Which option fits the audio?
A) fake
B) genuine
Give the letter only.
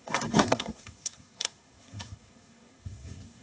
A